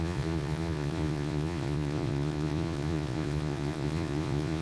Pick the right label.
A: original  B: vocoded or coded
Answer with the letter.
B